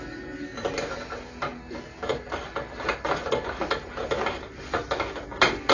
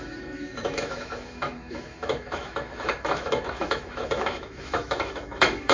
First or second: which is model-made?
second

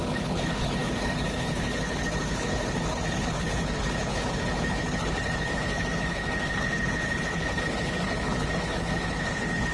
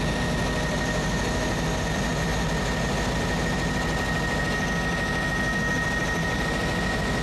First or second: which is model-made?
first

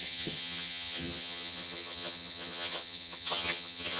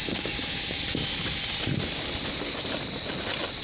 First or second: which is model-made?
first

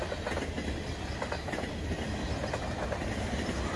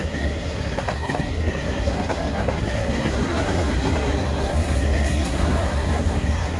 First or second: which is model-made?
second